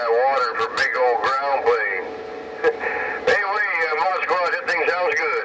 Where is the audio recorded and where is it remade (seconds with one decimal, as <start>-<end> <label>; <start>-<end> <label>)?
0.0-5.4 recorded